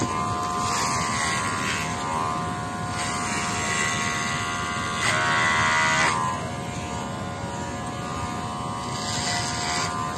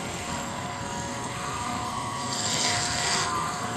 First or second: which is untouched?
first